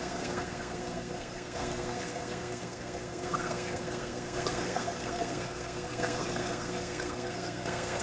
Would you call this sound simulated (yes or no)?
yes